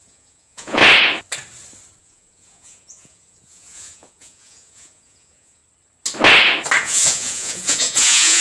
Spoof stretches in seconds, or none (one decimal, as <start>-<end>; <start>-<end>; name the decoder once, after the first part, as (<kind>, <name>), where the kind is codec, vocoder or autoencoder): 0.0-0.8 (vocoder, Vocos); 2.0-5.6; 6.8-8.4